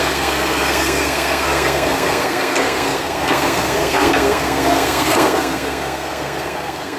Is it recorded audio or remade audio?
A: remade